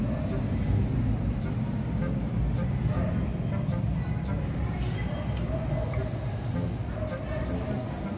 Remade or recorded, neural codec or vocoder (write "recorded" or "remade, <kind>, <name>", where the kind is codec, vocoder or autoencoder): recorded